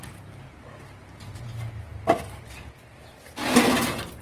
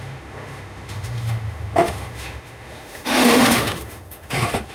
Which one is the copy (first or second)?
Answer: second